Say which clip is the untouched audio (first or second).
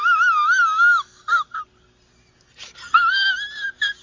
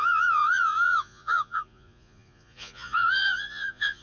first